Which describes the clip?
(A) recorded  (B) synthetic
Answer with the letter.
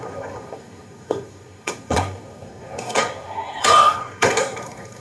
B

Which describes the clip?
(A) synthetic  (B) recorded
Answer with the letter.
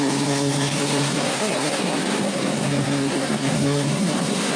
A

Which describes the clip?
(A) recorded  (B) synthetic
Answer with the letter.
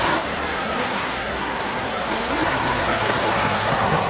B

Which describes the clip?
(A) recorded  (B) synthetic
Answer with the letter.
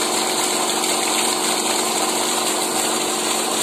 A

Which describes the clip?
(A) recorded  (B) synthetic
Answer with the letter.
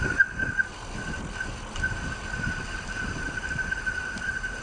A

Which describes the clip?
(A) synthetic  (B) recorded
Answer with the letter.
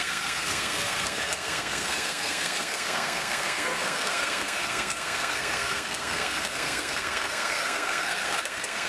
A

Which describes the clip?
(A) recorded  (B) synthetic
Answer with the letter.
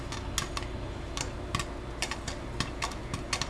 A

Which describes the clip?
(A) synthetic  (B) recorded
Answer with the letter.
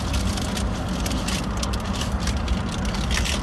B